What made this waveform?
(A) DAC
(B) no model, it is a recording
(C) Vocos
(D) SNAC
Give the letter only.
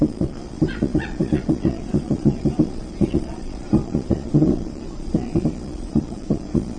C